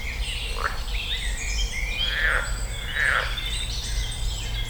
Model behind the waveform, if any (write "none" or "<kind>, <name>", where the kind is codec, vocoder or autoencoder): none